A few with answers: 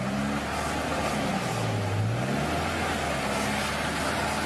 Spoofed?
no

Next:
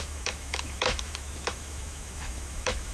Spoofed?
yes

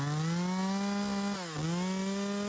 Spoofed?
no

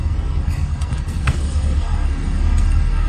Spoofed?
yes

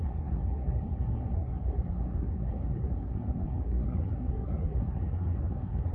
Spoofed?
yes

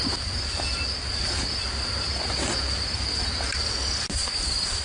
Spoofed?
no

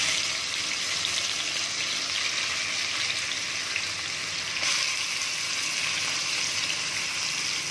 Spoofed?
no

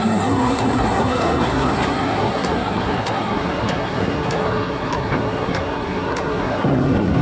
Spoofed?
yes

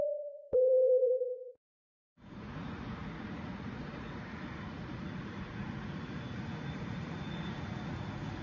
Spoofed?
yes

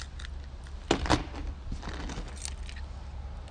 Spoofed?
no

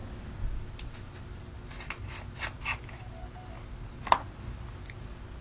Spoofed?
no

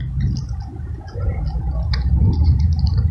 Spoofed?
no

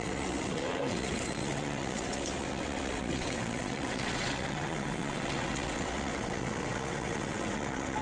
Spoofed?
yes